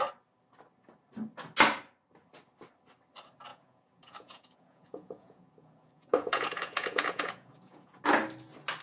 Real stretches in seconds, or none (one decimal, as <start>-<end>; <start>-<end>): 0.0-3.5; 8.0-8.8